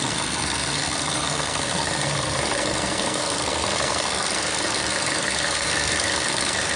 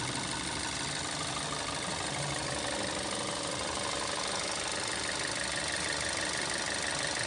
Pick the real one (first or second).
second